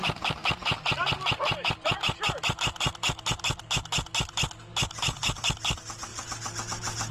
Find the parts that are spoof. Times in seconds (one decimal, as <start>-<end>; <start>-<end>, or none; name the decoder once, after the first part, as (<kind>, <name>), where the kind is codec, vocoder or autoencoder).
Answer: none